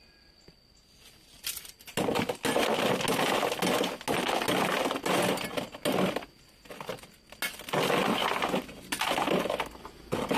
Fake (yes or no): no